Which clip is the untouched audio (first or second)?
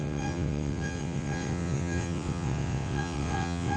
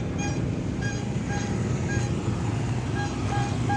second